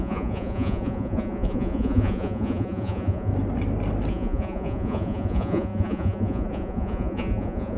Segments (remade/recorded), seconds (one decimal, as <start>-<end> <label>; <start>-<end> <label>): 0.0-3.3 remade; 3.3-4.1 recorded; 4.1-7.8 remade